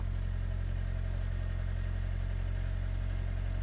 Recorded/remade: recorded